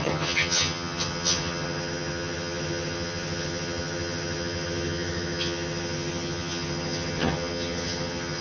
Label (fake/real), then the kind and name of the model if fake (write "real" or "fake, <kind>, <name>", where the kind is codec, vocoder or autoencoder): fake, vocoder, HiFi-GAN